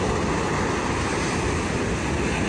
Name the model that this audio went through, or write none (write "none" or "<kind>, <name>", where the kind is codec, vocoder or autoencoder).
none